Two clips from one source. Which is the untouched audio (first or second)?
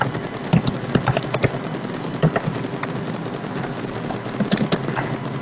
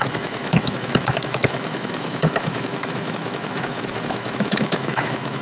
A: first